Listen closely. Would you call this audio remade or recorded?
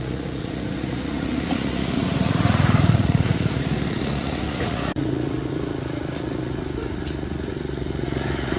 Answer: remade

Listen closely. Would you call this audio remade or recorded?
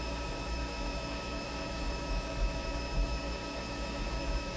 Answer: remade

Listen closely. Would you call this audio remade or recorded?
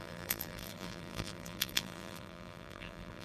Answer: remade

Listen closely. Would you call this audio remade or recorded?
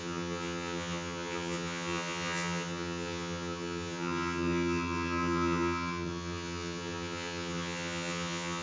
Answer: remade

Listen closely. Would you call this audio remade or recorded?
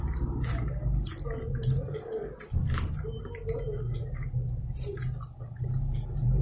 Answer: recorded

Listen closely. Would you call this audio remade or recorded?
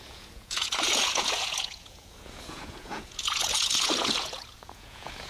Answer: remade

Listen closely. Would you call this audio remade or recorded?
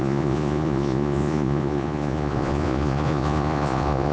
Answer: remade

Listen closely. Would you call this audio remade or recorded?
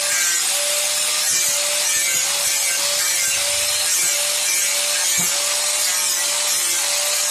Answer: recorded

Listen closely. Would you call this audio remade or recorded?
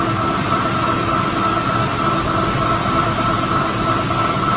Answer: recorded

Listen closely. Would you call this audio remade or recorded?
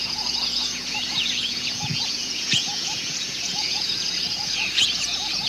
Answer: remade